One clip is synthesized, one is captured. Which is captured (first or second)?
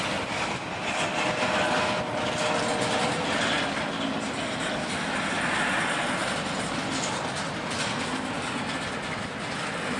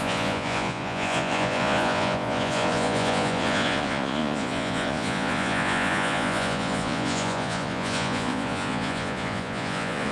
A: first